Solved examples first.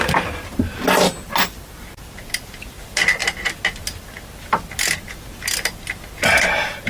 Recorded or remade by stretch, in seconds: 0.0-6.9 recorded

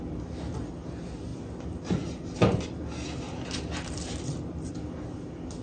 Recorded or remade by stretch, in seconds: 0.0-1.3 recorded; 1.3-4.7 remade; 4.7-5.6 recorded

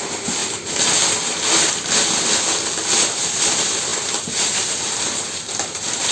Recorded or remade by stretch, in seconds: 0.0-0.4 remade; 0.4-3.0 recorded; 3.0-6.1 remade

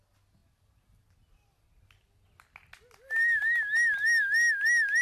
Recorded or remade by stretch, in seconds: 0.0-5.0 recorded

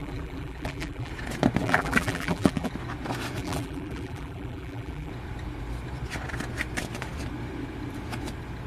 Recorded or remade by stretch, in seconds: 0.0-1.1 remade; 1.1-1.6 recorded; 1.6-2.7 remade; 2.7-3.4 recorded; 3.4-5.1 remade; 5.1-8.7 recorded